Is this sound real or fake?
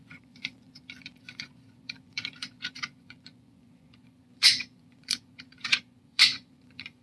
fake